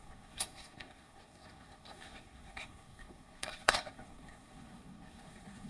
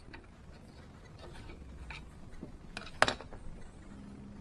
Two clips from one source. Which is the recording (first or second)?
second